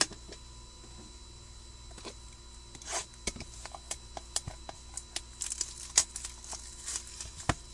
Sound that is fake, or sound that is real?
real